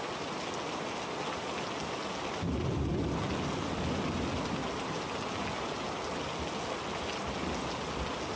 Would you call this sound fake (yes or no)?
no